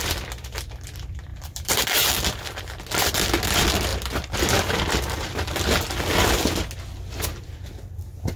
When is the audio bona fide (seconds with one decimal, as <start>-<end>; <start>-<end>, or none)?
0.0-1.3; 2.0-3.9; 5.3-8.4